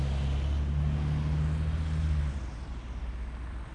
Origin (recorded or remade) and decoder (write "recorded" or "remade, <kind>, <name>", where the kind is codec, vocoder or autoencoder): recorded